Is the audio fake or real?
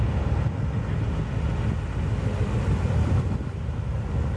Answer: real